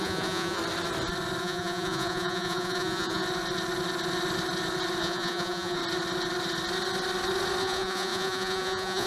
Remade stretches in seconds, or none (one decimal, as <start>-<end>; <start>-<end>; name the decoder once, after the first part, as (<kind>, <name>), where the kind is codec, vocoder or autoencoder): 0.0-0.6 (vocoder, Vocos); 1.4-3.2; 5.0-5.8; 7.6-9.1